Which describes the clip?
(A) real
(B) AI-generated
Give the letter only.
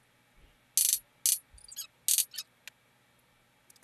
A